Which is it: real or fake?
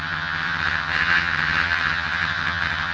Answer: fake